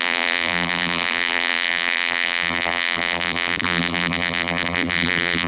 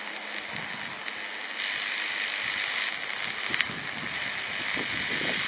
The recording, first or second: second